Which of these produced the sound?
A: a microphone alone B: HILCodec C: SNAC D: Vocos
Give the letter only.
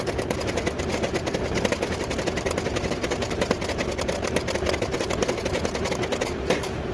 A